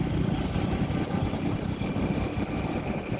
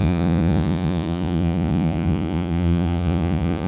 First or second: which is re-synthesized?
second